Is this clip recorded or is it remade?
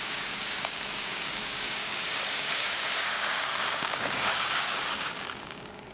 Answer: remade